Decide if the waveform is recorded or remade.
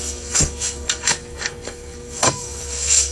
remade